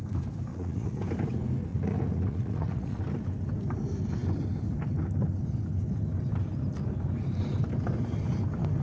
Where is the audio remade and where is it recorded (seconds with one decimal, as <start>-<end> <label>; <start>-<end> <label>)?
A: 0.0-0.5 recorded; 0.5-1.0 remade; 1.0-1.7 recorded; 1.7-3.0 remade; 3.0-8.8 recorded